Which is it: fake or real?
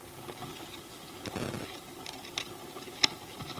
real